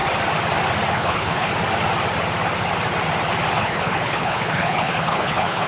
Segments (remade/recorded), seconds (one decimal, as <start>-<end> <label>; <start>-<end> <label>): 0.0-0.9 recorded; 0.9-1.5 remade; 1.5-3.6 recorded; 3.6-5.7 remade